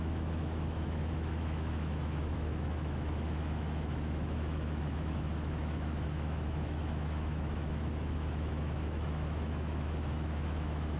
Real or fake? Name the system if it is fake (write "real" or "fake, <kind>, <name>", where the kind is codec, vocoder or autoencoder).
fake, autoencoder, DAC-VAE